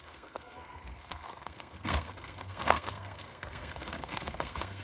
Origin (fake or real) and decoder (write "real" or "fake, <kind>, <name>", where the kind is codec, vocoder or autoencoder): fake, codec, SNAC